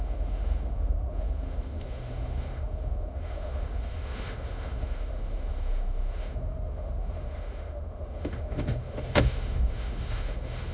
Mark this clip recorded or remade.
remade